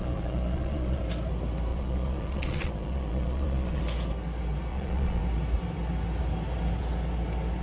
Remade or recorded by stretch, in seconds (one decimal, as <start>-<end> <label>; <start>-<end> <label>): 0.0-1.0 remade; 1.0-1.7 recorded; 1.7-3.8 remade; 3.8-4.7 recorded; 4.7-5.2 remade; 5.2-7.6 recorded